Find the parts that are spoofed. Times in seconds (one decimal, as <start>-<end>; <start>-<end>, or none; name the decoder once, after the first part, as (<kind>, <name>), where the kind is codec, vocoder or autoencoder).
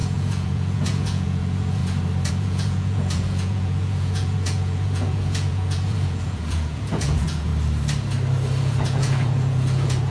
0.0-1.8 (vocoder, Vocos); 2.3-7.5; 8.6-10.1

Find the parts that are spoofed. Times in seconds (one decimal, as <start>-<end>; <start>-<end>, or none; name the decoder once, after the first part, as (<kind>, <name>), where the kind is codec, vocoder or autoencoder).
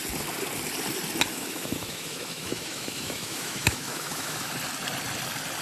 1.3-4.5 (autoencoder, DAC-VAE)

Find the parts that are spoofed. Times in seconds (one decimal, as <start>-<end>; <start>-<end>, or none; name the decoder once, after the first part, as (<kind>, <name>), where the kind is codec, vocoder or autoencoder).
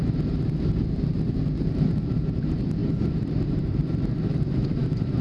0.0-5.2 (vocoder, BigVGAN v2)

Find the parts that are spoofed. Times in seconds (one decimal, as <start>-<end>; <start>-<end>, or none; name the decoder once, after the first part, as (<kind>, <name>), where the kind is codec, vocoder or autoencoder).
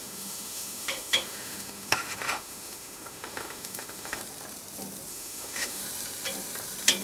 0.0-4.2 (autoencoder, DAC-VAE); 5.1-5.8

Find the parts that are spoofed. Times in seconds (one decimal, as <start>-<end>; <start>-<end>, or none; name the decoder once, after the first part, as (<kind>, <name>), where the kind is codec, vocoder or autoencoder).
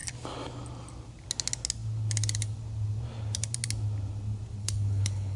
4.6-5.4 (codec, HILCodec)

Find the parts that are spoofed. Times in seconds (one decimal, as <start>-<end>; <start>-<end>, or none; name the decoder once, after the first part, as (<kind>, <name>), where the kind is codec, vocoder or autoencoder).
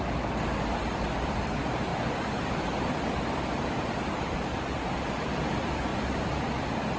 1.9-4.4 (vocoder, BigVGAN v2)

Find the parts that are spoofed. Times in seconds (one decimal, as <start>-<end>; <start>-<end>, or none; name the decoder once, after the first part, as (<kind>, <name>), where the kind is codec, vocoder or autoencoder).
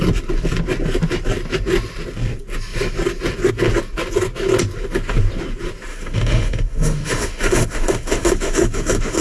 5.9-9.2 (autoencoder, DAC-VAE)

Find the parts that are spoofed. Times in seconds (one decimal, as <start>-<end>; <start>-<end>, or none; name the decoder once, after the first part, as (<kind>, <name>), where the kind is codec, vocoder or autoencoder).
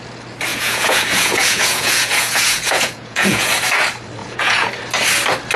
0.5-3.5 (vocoder, Vocos); 4.2-4.7